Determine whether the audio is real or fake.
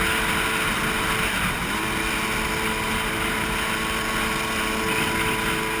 real